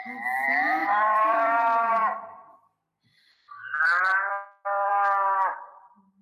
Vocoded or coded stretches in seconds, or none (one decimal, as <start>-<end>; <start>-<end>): 0.8-2.0; 3.1-4.9